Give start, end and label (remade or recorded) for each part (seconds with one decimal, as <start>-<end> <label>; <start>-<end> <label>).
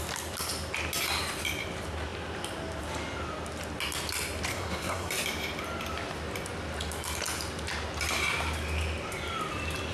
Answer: 0.0-4.5 recorded; 4.5-5.1 remade; 5.1-9.9 recorded